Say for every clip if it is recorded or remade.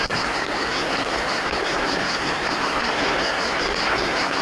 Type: remade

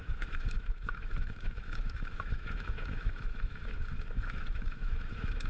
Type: remade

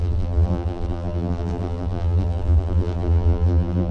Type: remade